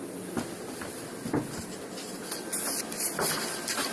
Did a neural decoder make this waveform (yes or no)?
no